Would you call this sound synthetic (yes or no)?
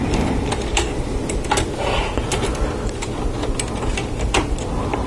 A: no